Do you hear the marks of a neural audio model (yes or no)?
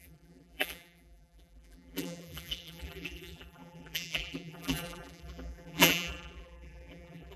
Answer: yes